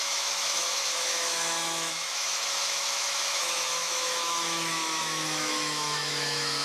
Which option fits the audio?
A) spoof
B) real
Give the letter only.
A